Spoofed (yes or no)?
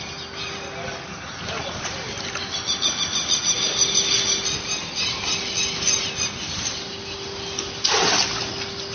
no